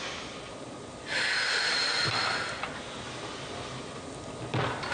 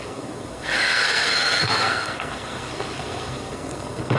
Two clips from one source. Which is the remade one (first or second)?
second